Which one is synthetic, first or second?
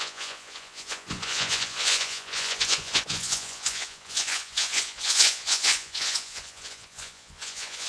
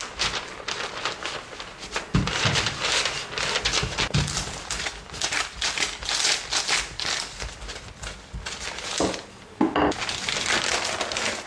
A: first